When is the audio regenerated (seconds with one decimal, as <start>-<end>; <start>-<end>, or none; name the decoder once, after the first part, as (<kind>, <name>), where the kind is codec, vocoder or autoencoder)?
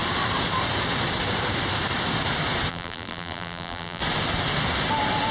2.7-4.0 (vocoder, BigVGAN v2)